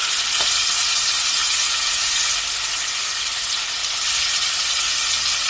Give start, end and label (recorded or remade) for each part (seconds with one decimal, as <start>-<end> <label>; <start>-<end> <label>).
0.0-1.4 recorded; 1.4-2.2 remade; 2.2-5.5 recorded